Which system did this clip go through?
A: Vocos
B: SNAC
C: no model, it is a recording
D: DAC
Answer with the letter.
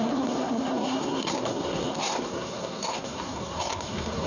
B